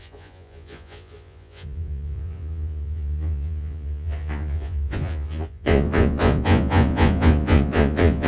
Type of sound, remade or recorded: remade